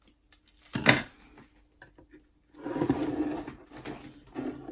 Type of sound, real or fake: real